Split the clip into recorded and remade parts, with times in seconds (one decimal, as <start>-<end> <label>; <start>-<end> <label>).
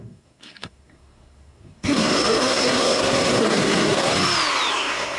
0.0-4.1 remade; 4.1-4.7 recorded; 4.7-5.2 remade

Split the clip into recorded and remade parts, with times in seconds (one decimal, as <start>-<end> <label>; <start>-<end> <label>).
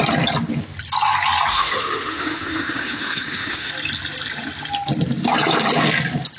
0.0-1.5 recorded; 1.5-3.7 remade; 3.7-6.4 recorded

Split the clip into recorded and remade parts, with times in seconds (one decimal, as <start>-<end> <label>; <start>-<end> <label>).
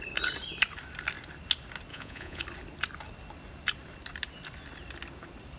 0.0-1.9 recorded; 1.9-2.4 remade; 2.4-5.6 recorded